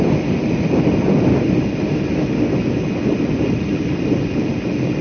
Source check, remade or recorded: recorded